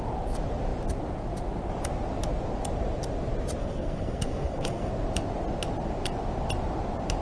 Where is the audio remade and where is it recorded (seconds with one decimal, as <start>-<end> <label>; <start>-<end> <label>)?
0.0-3.6 recorded; 3.6-4.9 remade; 4.9-7.2 recorded